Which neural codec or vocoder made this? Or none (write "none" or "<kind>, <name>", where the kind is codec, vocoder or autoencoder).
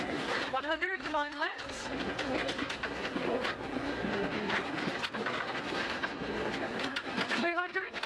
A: codec, SNAC